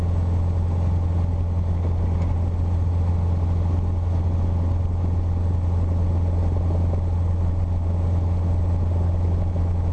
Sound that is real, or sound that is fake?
real